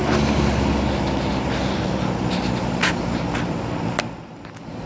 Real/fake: real